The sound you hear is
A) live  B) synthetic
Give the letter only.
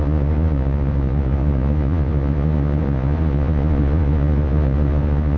B